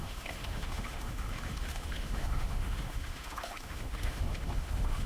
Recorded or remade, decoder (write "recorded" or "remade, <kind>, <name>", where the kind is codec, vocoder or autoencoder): remade, autoencoder, DAC-VAE